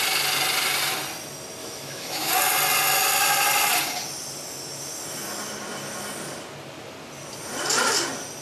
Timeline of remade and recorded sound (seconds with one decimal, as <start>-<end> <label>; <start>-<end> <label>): 0.0-1.6 recorded; 1.6-2.3 remade; 2.3-8.4 recorded